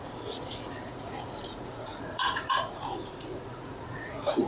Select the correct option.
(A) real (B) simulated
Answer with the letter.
B